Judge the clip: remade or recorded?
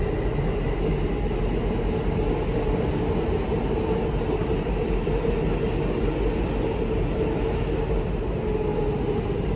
recorded